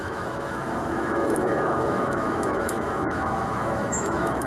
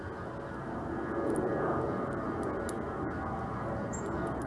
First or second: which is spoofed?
first